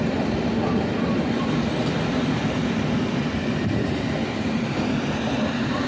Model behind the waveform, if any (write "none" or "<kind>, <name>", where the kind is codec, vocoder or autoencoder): none